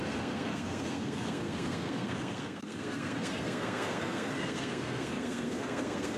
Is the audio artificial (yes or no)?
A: yes